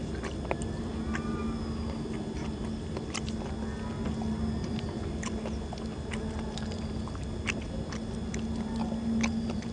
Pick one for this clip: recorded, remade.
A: recorded